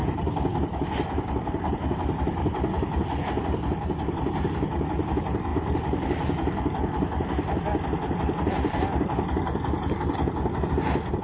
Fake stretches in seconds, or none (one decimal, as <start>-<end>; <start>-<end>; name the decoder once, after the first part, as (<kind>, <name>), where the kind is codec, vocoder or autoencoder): none